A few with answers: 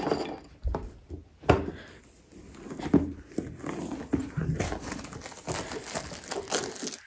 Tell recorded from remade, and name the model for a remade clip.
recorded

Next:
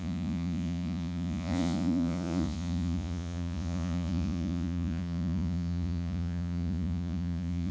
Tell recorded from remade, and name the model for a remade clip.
remade, vocoder, Vocos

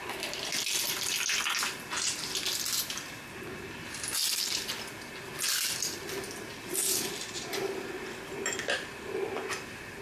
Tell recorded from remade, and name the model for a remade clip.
recorded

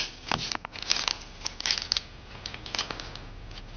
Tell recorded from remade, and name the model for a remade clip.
recorded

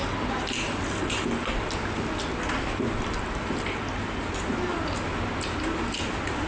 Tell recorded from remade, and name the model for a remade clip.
recorded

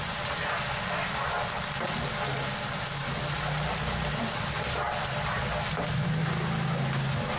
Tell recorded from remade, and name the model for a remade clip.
recorded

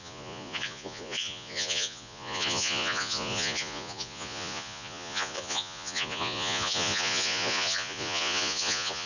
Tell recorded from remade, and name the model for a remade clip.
remade, vocoder, Vocos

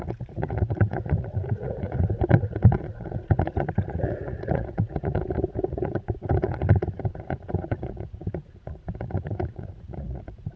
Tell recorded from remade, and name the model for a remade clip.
remade, vocoder, Vocos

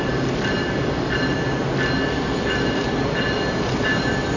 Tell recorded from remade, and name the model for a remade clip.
recorded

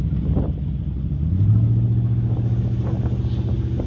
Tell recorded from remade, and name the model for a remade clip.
recorded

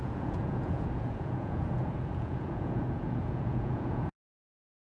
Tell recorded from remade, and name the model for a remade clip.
remade, vocoder, Vocos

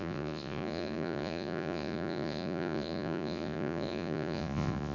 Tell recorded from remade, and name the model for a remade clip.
remade, vocoder, Vocos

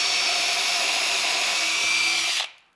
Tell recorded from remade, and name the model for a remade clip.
recorded